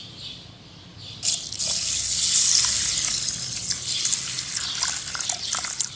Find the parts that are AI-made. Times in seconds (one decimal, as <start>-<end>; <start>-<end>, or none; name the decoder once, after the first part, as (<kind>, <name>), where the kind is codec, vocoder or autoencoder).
none